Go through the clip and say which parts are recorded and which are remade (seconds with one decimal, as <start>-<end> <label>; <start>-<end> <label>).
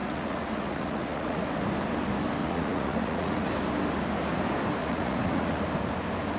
0.0-1.4 remade; 1.4-2.4 recorded; 2.4-3.5 remade; 3.5-4.8 recorded; 4.8-5.6 remade; 5.6-6.4 recorded